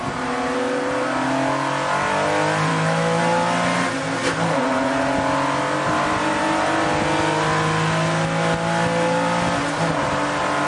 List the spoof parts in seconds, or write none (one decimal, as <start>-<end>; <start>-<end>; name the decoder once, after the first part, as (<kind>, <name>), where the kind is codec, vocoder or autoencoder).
2.7-3.2 (autoencoder, DAC-VAE)

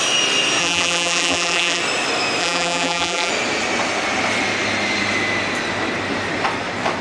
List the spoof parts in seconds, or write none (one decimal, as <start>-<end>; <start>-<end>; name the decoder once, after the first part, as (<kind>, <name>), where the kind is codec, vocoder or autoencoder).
0.6-1.8 (vocoder, BigVGAN v2); 2.4-3.3